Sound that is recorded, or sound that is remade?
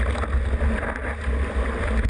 recorded